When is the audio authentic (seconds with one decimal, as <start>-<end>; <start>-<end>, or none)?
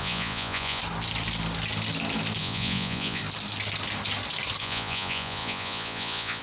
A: 0.8-2.4; 3.2-4.6